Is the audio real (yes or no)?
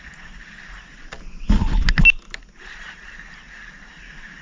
yes